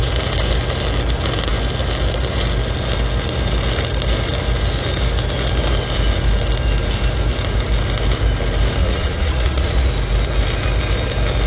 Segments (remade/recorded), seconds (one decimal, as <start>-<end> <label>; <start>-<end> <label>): 0.0-8.8 recorded; 8.8-9.9 remade; 9.9-11.5 recorded